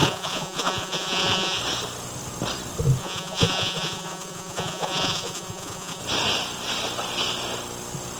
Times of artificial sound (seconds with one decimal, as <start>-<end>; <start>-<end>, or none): 0.0-1.6; 3.0-6.0